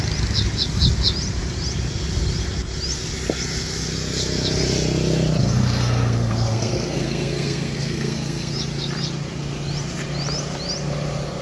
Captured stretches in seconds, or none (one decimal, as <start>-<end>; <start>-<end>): 0.0-5.4; 8.5-11.4